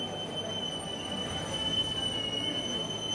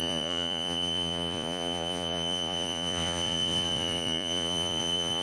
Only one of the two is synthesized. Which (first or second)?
second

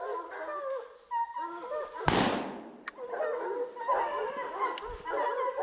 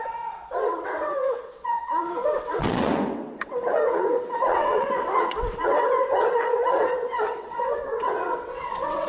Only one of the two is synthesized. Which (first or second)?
second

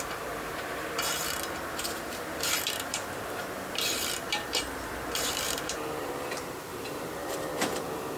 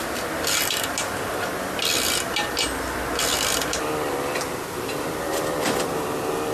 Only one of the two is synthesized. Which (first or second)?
first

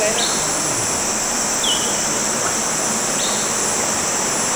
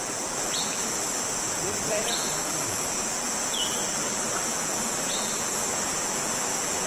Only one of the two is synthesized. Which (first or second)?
second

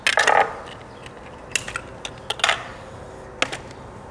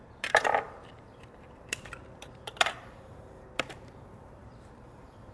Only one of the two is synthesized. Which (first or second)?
second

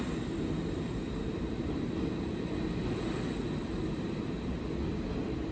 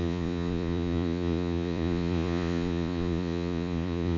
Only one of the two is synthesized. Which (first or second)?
second